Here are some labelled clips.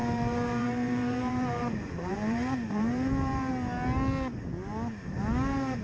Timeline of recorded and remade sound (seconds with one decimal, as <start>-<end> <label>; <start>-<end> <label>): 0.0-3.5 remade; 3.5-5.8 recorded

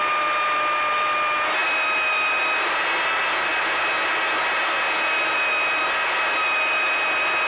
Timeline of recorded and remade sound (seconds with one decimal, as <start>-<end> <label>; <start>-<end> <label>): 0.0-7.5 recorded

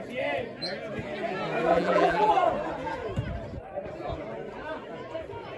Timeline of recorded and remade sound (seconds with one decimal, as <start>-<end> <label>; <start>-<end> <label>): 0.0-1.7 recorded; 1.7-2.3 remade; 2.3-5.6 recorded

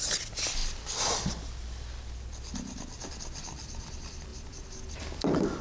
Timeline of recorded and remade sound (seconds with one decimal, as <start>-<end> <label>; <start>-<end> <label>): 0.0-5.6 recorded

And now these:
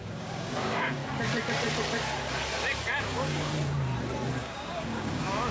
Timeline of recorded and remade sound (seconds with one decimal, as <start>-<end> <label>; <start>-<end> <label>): 0.0-1.0 remade; 1.0-3.0 recorded; 3.0-3.5 remade; 3.5-4.3 recorded; 4.3-5.5 remade